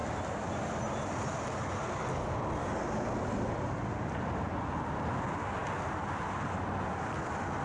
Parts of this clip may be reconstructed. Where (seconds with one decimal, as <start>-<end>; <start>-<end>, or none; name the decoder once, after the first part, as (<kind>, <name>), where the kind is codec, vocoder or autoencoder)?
none